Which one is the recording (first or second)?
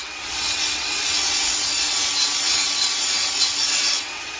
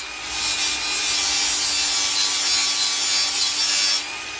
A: second